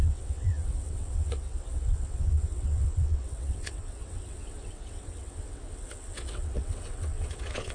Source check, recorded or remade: remade